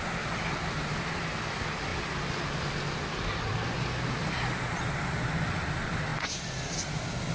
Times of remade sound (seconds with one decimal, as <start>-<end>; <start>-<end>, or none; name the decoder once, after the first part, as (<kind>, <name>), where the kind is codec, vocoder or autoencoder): none